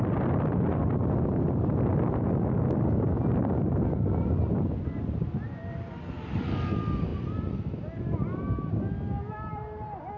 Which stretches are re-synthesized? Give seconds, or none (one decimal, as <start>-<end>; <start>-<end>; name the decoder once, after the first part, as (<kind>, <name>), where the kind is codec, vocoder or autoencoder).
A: none